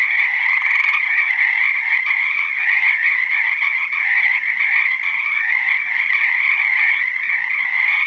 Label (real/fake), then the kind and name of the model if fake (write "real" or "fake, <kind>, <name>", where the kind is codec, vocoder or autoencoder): fake, vocoder, HiFi-GAN